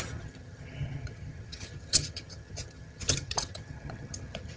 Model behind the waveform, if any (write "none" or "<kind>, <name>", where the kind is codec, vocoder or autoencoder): vocoder, HiFi-GAN